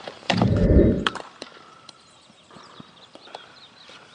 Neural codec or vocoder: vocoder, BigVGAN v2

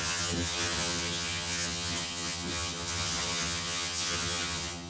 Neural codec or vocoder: vocoder, HiFi-GAN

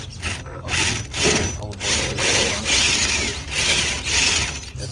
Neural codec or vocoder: none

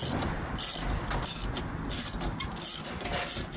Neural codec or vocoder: none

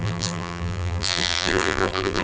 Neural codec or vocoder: vocoder, BigVGAN v2